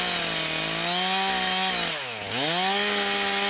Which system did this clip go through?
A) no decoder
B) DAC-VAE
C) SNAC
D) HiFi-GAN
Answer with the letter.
A